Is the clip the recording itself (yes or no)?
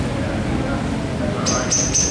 yes